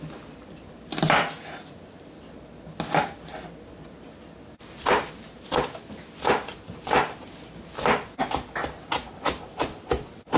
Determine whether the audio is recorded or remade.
recorded